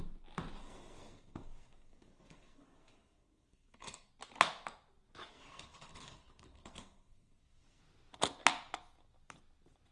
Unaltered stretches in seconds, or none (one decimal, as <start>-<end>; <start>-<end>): 0.0-0.6; 4.1-5.3; 7.8-9.9